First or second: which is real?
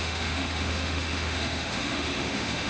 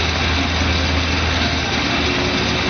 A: second